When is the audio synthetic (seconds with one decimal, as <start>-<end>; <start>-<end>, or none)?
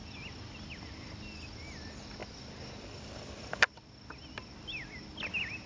none